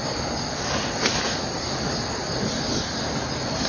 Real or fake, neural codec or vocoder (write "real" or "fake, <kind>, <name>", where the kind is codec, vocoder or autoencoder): real